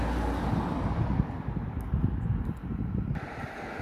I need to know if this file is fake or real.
real